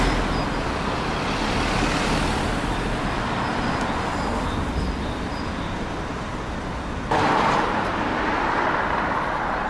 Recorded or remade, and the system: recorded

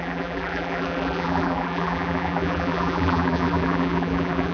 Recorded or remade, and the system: remade, vocoder, BigVGAN v2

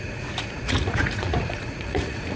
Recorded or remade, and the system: remade, vocoder, Vocos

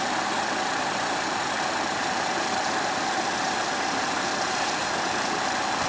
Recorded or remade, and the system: recorded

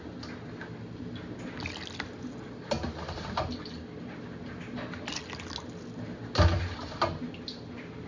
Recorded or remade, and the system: recorded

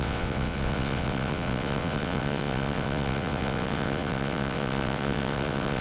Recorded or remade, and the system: remade, vocoder, WaveNeXt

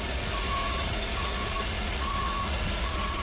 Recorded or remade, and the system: remade, vocoder, Vocos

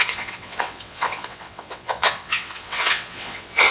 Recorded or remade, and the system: remade, vocoder, WaveNeXt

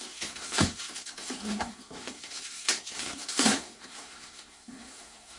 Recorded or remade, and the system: remade, codec, SNAC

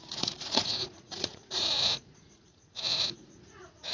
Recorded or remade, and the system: remade, vocoder, Vocos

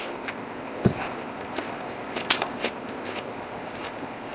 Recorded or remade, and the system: remade, codec, ZipCodec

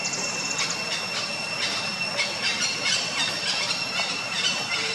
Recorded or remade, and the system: recorded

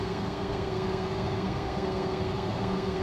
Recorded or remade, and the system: remade, codec, SNAC